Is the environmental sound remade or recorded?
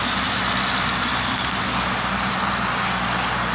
recorded